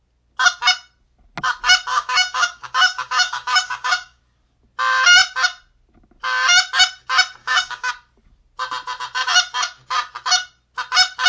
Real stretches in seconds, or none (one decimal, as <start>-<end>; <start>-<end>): 0.0-1.9; 4.2-7.4; 7.9-11.3